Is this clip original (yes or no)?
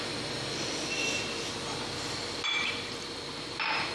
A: yes